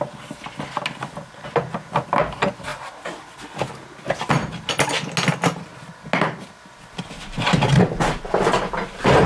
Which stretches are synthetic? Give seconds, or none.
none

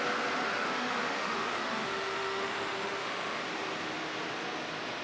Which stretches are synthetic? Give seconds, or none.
0.4-3.4 (autoencoder, DAC-VAE)

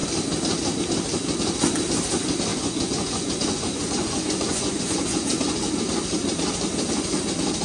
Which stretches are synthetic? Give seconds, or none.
2.5-5.7 (vocoder, Vocos)